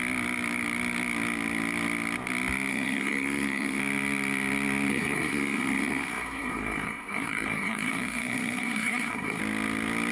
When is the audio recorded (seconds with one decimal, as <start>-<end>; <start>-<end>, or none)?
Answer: 0.0-2.7; 3.8-4.9; 9.4-10.1